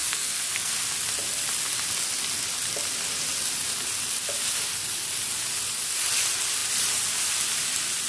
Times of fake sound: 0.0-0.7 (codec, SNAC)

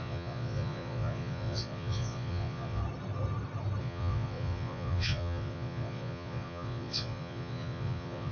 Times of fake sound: 0.0-2.8 (vocoder, Vocos); 3.8-8.3

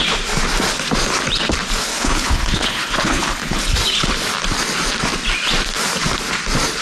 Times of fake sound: 1.9-3.6 (codec, HILCodec)